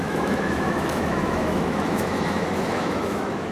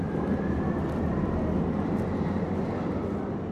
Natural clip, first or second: second